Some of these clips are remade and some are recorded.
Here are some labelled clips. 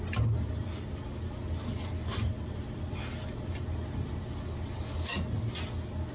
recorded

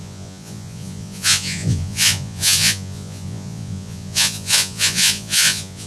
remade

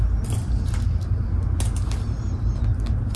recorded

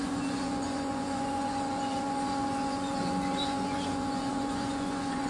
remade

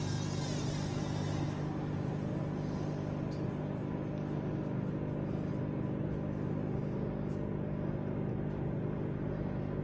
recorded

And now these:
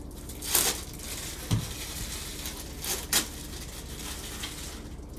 recorded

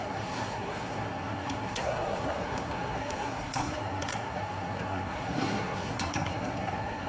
remade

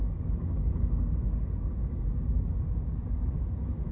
remade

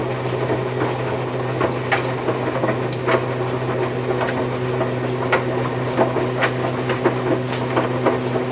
recorded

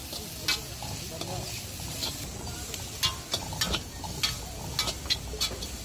recorded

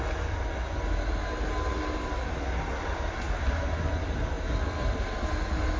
recorded